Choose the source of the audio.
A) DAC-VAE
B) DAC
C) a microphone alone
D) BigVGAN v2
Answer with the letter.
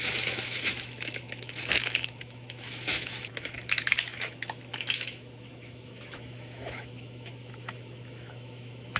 A